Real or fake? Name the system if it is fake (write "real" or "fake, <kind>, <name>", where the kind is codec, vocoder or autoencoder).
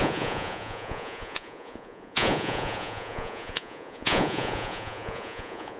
fake, vocoder, Vocos